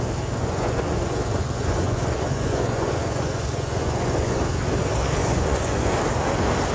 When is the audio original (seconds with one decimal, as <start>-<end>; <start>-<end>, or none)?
0.0-0.4; 4.4-5.2; 5.9-6.7